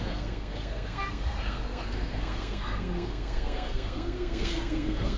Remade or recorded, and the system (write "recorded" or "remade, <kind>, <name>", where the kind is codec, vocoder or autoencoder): remade, codec, SNAC